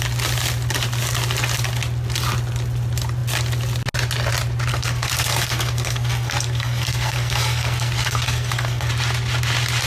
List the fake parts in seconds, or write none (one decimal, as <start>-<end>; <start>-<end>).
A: 4.7-8.9